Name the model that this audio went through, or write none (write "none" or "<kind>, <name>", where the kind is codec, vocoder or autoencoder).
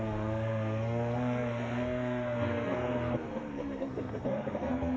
codec, SNAC